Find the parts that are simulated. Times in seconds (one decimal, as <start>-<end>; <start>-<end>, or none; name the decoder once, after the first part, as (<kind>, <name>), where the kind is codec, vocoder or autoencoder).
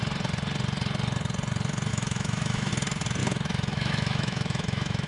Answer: 1.9-2.7 (autoencoder, DAC-VAE); 3.2-5.1